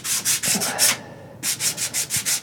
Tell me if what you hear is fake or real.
real